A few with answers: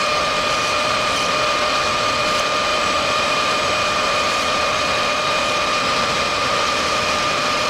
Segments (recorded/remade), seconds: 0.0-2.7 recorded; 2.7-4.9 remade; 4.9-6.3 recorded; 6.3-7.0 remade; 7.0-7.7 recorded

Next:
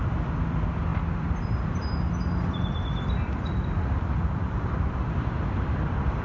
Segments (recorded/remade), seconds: 0.0-6.2 remade

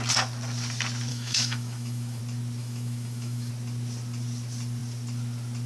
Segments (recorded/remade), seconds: 0.0-1.1 recorded; 1.1-2.2 remade; 2.2-2.6 recorded; 2.6-3.5 remade; 3.5-5.7 recorded

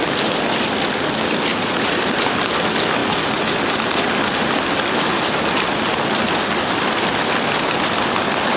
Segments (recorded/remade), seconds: 0.0-1.5 recorded; 1.5-2.0 remade; 2.0-8.6 recorded

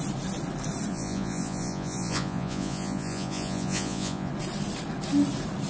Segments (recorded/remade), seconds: 0.0-0.9 recorded; 0.9-4.3 remade; 4.3-5.7 recorded